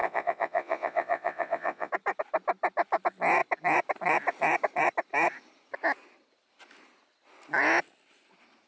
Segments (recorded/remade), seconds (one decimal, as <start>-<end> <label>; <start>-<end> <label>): 0.0-1.9 remade; 1.9-8.7 recorded